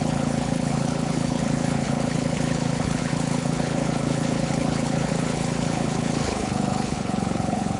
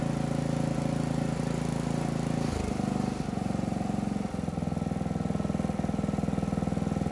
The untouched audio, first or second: second